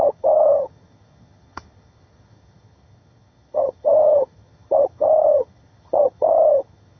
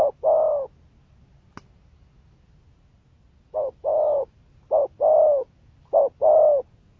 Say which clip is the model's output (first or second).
first